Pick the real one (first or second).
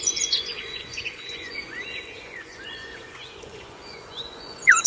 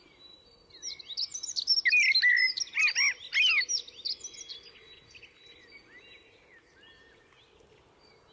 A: second